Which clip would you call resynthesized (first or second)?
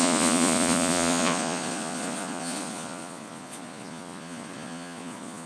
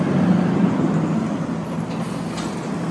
first